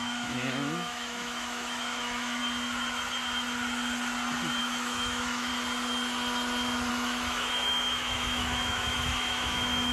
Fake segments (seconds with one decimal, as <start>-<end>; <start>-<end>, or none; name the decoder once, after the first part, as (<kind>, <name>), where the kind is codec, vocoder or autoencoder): 0.0-2.4 (autoencoder, DAC-VAE); 4.6-5.5; 6.9-9.9